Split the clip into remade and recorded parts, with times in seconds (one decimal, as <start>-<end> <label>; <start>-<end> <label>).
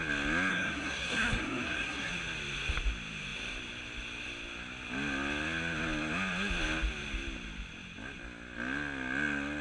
0.0-0.5 recorded; 0.5-2.1 remade; 2.1-9.6 recorded